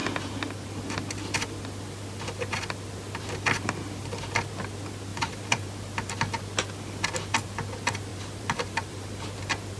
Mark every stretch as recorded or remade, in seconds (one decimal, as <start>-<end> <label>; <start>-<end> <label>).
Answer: 0.0-5.1 recorded; 5.1-5.7 remade; 5.7-8.1 recorded; 8.1-9.4 remade; 9.4-9.8 recorded